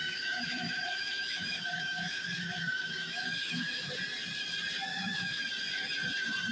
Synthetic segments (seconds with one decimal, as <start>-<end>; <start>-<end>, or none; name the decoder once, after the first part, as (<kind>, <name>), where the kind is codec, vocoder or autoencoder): 0.0-3.9 (autoencoder, DAC-VAE); 4.9-5.4